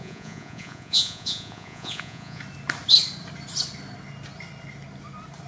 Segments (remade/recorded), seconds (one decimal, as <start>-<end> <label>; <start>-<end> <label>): 0.0-2.4 remade; 2.4-5.5 recorded